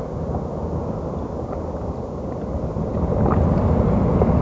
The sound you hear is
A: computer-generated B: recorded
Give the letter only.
B